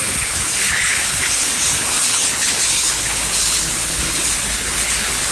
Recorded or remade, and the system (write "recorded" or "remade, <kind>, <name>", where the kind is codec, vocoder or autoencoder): remade, codec, HILCodec